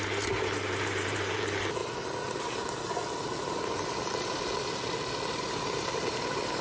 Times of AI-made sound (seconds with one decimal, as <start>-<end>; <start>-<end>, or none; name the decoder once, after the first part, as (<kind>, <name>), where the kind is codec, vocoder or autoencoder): 0.0-1.8 (vocoder, BigVGAN v2); 5.4-6.6